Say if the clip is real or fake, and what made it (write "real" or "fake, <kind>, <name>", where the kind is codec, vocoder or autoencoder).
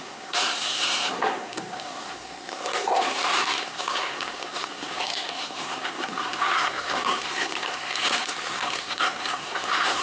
fake, codec, SNAC